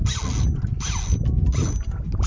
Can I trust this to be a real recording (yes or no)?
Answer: yes